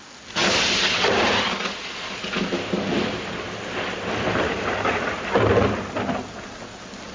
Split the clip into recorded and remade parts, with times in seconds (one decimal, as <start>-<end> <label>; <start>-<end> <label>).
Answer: 0.0-7.1 recorded